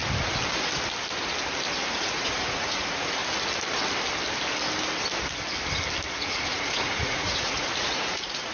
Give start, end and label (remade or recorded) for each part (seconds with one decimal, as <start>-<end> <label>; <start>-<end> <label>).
0.0-1.9 recorded; 1.9-3.2 remade; 3.2-6.1 recorded; 6.1-8.5 remade